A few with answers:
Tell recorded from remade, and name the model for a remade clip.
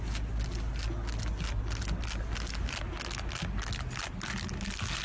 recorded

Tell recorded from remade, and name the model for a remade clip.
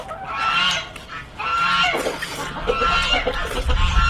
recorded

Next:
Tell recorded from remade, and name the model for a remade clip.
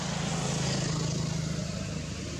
recorded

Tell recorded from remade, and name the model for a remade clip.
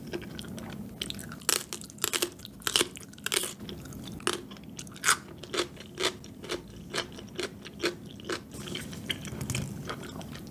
recorded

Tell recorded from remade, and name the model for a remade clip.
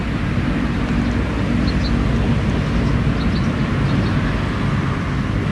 recorded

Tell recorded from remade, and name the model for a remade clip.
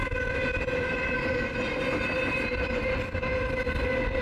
recorded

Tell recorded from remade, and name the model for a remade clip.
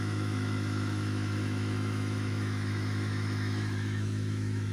remade, autoencoder, DAC-VAE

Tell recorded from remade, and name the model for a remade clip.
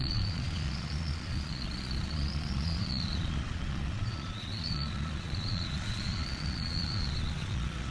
remade, vocoder, Vocos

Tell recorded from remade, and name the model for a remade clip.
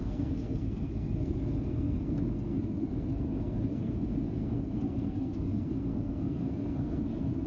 remade, codec, SNAC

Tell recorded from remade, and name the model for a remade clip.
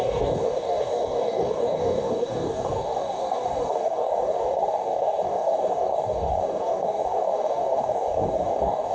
remade, codec, DAC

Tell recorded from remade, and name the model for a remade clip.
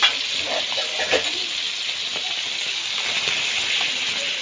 recorded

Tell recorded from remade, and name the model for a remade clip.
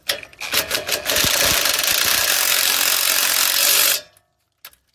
recorded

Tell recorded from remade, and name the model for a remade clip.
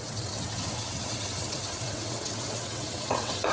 remade, vocoder, WaveNeXt